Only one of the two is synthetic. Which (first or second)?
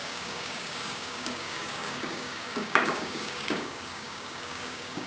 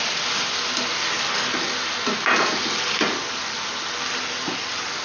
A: first